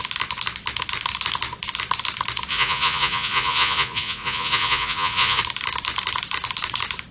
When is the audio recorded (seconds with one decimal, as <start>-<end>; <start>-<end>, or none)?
0.0-2.5; 5.4-7.1